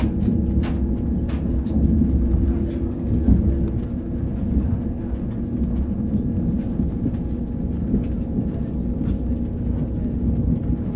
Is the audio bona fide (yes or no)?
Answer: yes